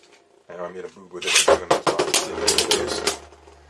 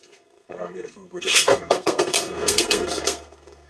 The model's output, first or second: second